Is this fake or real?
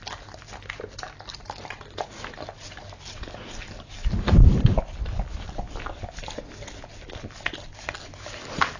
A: real